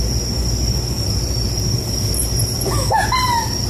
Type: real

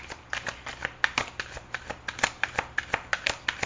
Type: real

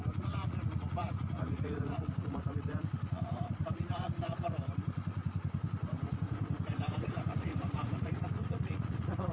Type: fake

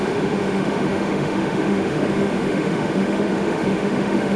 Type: fake